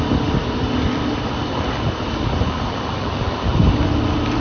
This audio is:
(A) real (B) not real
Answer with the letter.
A